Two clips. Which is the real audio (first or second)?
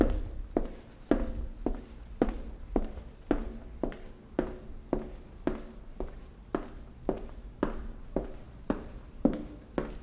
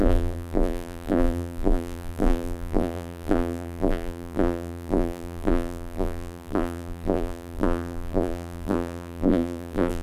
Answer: first